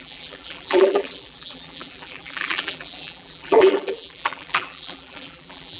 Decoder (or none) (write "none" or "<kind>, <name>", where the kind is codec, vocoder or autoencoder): vocoder, BigVGAN v2